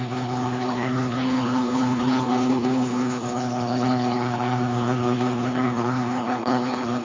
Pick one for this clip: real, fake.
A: fake